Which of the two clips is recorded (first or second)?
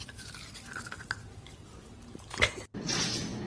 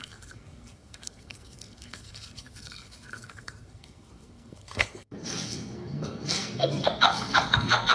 first